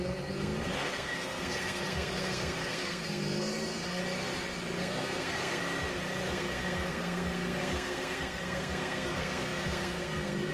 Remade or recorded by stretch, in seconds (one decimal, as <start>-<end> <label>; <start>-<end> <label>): 0.0-4.0 remade; 4.0-4.8 recorded; 4.8-5.6 remade; 5.6-6.3 recorded; 6.3-10.5 remade